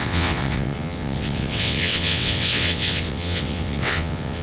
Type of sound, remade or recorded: remade